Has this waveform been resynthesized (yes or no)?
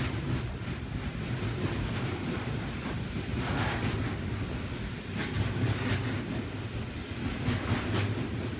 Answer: no